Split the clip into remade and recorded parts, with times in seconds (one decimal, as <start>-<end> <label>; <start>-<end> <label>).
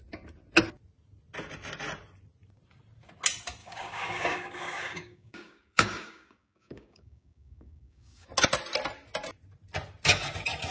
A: 0.0-3.6 recorded; 3.6-8.3 remade; 8.3-10.7 recorded